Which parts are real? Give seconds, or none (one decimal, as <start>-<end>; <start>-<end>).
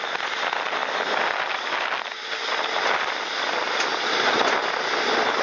0.8-3.7